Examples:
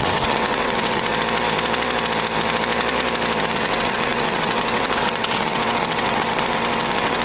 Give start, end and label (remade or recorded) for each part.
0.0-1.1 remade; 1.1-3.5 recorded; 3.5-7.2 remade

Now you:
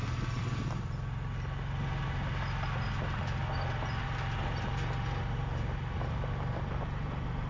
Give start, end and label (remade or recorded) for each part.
0.0-7.5 recorded

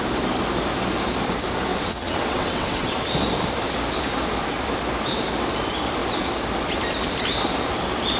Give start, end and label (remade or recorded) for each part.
0.0-1.7 recorded; 1.7-2.9 remade; 2.9-8.2 recorded